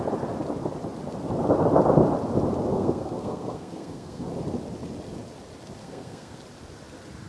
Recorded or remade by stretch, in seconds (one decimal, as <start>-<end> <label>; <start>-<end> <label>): 0.0-2.7 recorded; 2.7-4.3 remade; 4.3-5.8 recorded; 5.8-6.4 remade; 6.4-7.3 recorded